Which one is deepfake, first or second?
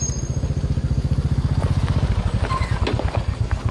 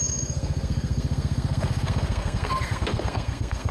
second